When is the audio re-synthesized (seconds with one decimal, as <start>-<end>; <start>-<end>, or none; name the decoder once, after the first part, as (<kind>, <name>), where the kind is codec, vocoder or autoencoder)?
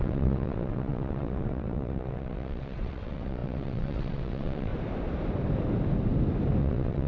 0.0-4.7 (vocoder, WaveNeXt); 6.6-7.1